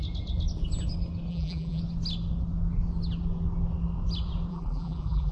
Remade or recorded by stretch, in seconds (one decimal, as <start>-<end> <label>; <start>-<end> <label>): 0.0-1.3 recorded; 1.3-1.8 remade; 1.8-4.5 recorded; 4.5-5.3 remade